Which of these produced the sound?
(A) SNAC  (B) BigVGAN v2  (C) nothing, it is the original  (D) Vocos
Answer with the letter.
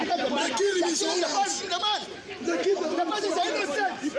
B